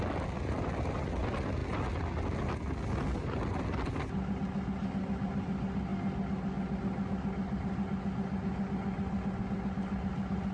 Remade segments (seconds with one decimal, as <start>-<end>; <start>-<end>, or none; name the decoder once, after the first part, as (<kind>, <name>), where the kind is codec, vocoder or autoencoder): none